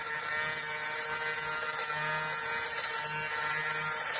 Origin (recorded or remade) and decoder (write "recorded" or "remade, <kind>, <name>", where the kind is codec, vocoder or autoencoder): recorded